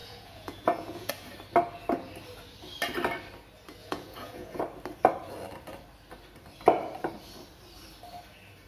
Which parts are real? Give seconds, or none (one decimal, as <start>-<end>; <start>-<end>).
1.1-3.8; 4.6-8.7